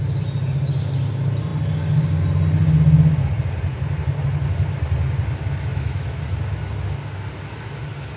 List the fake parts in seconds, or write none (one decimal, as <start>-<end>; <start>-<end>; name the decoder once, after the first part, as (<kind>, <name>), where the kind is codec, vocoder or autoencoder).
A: 5.7-6.2 (autoencoder, DAC-VAE)